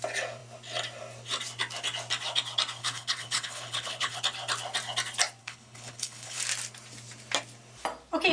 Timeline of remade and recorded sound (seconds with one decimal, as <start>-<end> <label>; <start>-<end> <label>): 0.0-2.8 recorded; 2.8-4.2 remade; 4.2-5.4 recorded; 5.4-6.4 remade; 6.4-8.3 recorded